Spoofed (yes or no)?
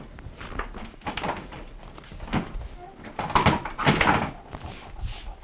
no